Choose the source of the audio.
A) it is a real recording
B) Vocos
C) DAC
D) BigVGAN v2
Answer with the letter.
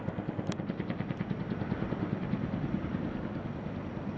A